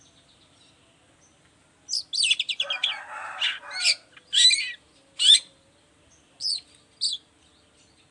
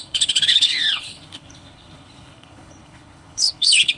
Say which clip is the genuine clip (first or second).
first